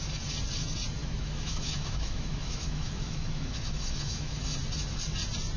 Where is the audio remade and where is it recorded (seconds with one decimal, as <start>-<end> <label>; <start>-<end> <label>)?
0.0-1.0 recorded; 1.0-4.4 remade; 4.4-5.6 recorded